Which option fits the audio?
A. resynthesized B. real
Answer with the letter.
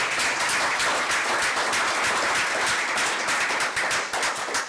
B